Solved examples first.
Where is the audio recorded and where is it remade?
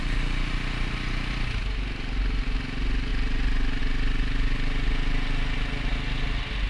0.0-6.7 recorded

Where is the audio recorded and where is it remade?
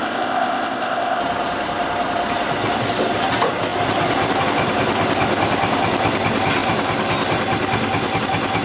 0.0-1.2 remade; 1.2-8.6 recorded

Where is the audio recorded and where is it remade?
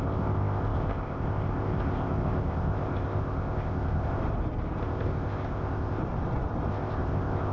0.0-4.2 remade; 4.2-4.8 recorded; 4.8-6.0 remade; 6.0-6.7 recorded; 6.7-7.5 remade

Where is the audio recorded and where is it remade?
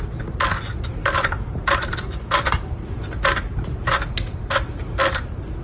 0.0-1.0 recorded; 1.0-2.8 remade; 2.8-5.6 recorded